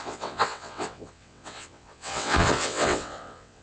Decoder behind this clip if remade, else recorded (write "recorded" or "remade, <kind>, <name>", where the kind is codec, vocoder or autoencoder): remade, vocoder, WaveNeXt